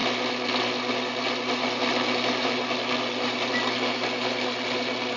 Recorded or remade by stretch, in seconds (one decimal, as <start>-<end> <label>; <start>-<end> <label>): 0.0-5.2 recorded